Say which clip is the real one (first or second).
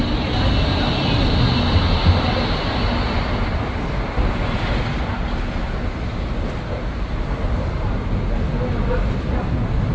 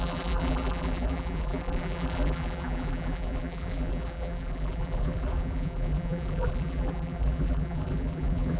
first